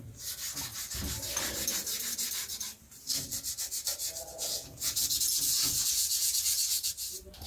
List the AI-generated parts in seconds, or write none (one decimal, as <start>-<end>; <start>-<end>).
4.3-6.9